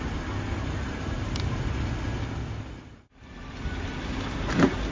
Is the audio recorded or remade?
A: recorded